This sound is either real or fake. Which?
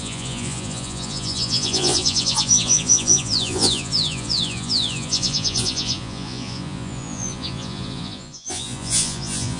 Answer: fake